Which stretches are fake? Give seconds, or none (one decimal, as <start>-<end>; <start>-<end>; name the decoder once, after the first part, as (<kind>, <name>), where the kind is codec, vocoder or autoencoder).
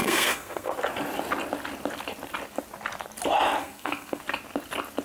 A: 0.0-0.7 (codec, SNAC); 3.6-4.2